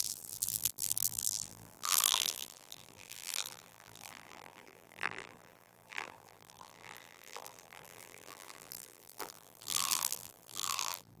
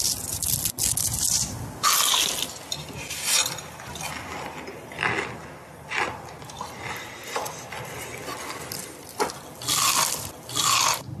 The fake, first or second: first